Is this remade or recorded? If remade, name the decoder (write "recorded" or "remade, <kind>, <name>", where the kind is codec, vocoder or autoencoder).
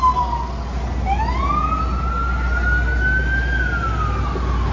recorded